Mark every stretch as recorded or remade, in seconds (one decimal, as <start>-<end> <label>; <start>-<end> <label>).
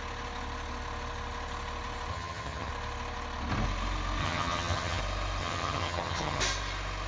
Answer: 0.0-2.1 recorded; 2.1-2.7 remade; 2.7-4.2 recorded; 4.2-5.0 remade; 5.0-5.4 recorded; 5.4-6.4 remade; 6.4-7.1 recorded